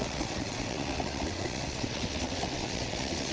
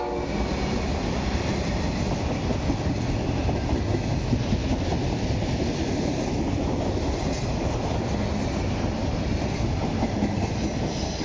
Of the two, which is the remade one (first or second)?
first